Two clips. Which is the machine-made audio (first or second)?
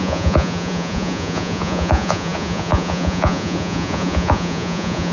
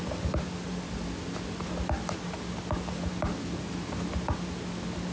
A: first